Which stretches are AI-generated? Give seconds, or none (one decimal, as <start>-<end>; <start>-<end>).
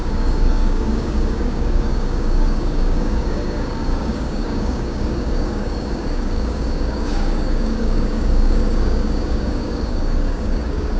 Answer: 0.0-11.0